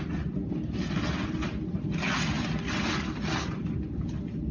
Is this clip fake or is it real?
real